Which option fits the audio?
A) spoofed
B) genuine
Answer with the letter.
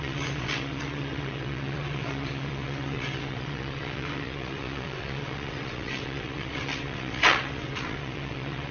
A